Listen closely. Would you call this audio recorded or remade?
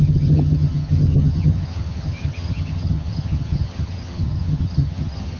remade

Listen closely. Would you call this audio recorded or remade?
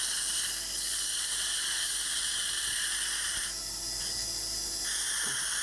recorded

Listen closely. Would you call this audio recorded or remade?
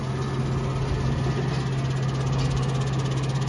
recorded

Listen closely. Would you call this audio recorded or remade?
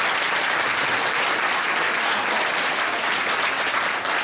recorded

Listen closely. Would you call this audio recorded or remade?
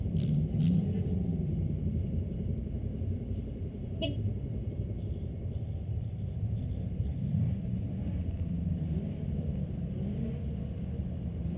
remade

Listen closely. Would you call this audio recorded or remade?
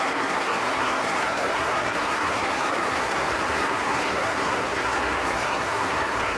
remade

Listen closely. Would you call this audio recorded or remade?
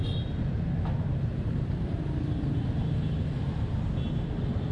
recorded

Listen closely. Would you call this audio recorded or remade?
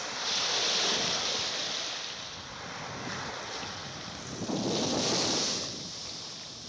recorded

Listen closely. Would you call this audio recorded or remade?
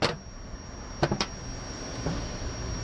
recorded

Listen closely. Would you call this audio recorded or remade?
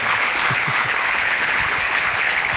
remade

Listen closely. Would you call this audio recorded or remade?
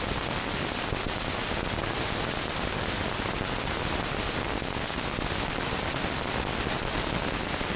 recorded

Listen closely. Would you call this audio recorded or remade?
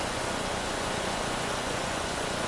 remade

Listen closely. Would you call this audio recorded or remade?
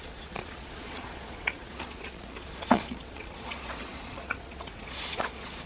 remade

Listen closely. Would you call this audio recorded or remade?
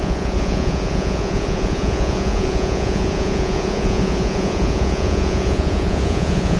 remade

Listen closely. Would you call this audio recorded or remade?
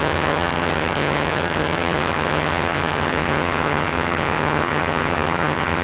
remade